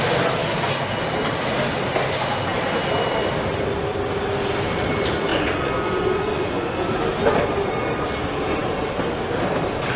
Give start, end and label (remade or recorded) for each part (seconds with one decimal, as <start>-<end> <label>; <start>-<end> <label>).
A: 0.0-5.3 recorded; 5.3-6.5 remade; 6.5-10.0 recorded